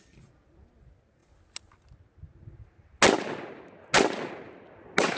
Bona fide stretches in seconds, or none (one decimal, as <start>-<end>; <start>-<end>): 0.0-5.2